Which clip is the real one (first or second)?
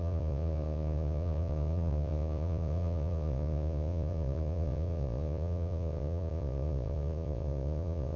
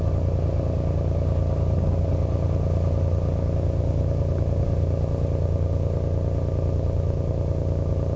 second